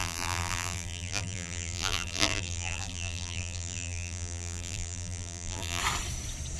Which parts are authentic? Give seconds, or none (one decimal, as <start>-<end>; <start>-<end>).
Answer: 5.8-6.6